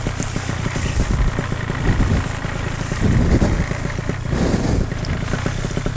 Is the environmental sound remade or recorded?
recorded